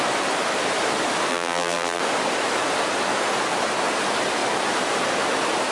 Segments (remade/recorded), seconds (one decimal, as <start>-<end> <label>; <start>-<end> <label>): 0.0-1.3 recorded; 1.3-2.0 remade; 2.0-5.7 recorded